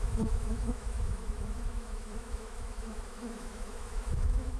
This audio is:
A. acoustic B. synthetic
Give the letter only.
B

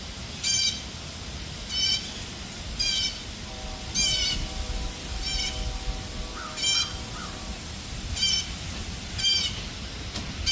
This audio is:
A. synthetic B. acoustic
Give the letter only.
B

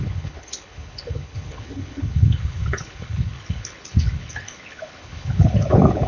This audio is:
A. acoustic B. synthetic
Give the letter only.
B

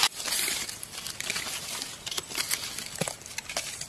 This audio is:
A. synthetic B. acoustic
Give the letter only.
B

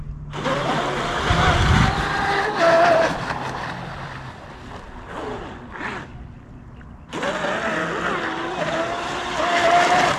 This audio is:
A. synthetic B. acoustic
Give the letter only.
B